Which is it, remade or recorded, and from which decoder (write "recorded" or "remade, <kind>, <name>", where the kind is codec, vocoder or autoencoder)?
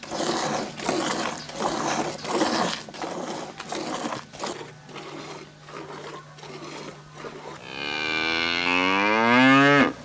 recorded